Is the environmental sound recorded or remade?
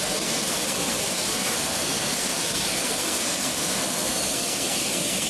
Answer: remade